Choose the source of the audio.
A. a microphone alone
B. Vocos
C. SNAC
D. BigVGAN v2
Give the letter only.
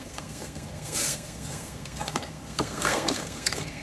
C